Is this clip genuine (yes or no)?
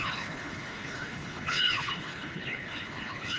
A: no